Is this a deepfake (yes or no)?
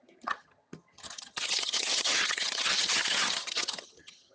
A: yes